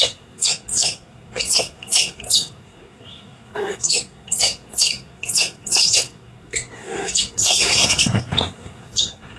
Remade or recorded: remade